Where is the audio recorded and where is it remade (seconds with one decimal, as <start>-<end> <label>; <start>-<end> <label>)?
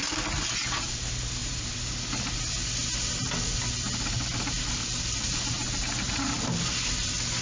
0.0-7.4 recorded